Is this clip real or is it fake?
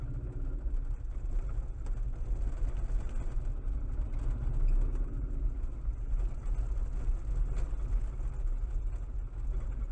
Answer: real